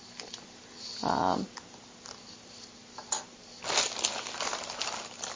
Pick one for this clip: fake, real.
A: real